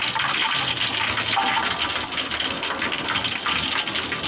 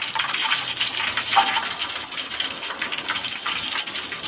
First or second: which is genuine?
first